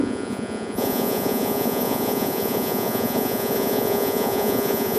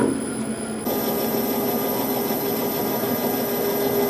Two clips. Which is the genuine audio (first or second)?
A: second